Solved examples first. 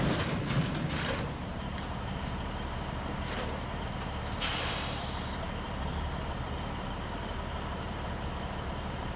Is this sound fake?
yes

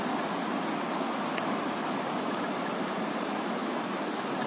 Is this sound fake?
no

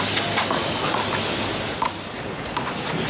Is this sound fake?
no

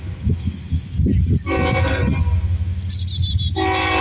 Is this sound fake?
no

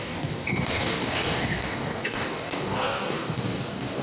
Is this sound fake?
yes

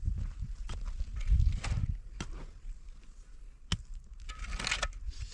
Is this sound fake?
no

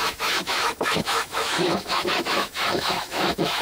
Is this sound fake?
yes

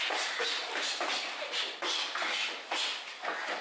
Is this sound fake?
no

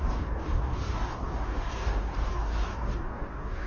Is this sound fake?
yes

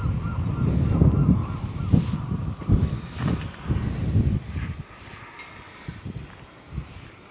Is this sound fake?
no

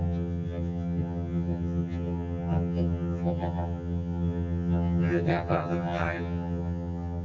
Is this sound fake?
yes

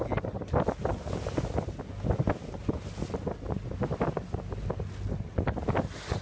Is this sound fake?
no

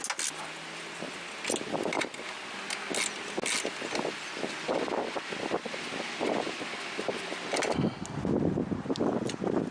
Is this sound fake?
no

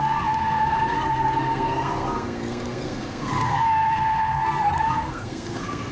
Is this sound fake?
yes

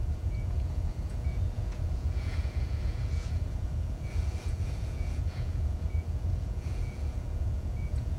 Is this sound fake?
yes